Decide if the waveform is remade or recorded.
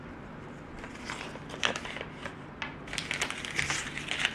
recorded